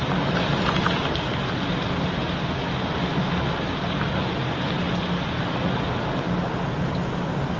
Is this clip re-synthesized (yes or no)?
no